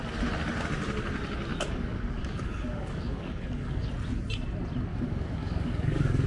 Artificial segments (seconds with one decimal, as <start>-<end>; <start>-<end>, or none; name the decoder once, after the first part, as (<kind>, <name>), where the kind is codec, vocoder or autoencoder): 1.5-3.9 (codec, DAC); 4.9-6.3